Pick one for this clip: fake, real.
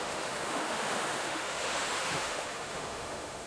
fake